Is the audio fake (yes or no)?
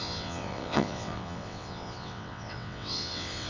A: yes